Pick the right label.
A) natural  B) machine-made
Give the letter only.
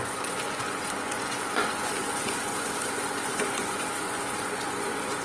B